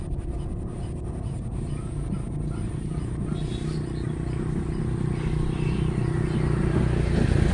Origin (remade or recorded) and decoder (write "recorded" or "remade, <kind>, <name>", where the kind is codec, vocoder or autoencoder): recorded